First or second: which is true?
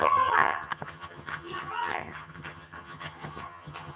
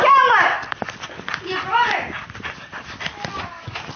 second